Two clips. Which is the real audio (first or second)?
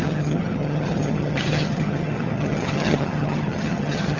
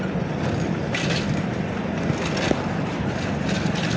second